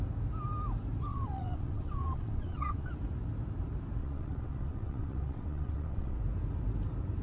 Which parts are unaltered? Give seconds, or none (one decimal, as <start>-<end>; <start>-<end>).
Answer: 0.0-1.1; 2.9-4.0; 6.2-7.2